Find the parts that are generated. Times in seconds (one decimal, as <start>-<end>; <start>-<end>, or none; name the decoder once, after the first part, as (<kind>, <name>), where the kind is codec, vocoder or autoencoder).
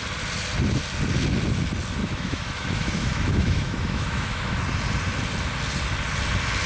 2.0-4.6 (autoencoder, DAC-VAE)